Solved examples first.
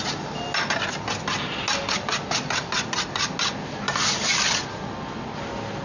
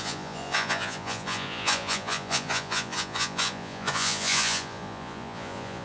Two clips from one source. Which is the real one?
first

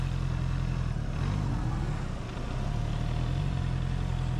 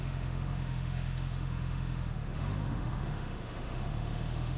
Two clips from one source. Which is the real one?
first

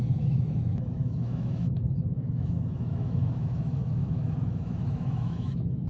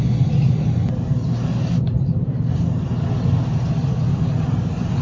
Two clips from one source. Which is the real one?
second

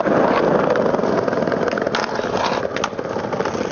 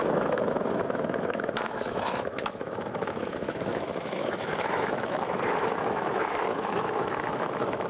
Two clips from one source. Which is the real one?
first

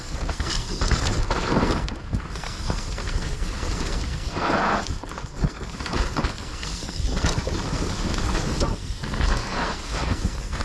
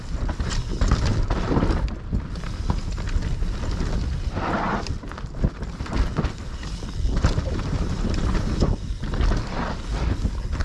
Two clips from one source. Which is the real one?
second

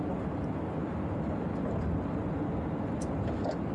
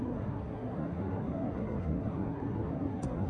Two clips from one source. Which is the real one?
first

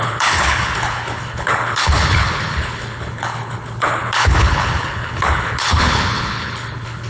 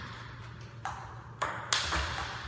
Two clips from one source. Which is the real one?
second